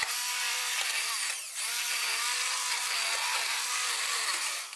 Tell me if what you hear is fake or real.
fake